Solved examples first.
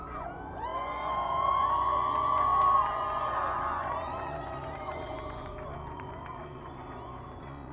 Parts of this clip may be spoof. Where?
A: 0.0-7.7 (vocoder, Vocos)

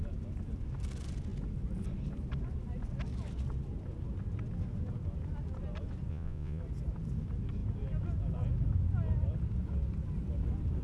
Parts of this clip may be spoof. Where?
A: 6.1-6.6 (vocoder, Vocos)

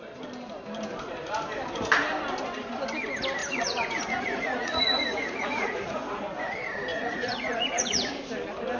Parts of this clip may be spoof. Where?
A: 3.4-6.2 (vocoder, Vocos); 6.9-8.1

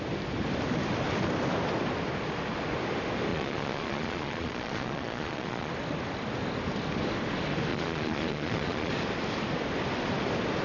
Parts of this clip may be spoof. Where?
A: 3.3-5.7 (vocoder, Vocos); 7.7-8.9

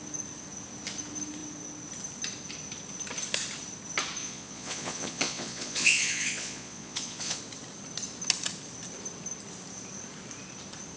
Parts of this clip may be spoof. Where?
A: 4.2-7.4 (vocoder, Vocos)

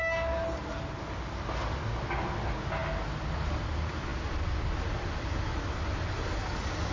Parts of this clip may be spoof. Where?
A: none

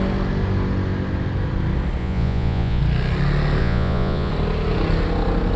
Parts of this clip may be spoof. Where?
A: 2.0-2.8 (vocoder, Vocos); 3.6-4.3